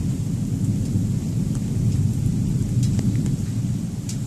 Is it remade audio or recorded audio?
recorded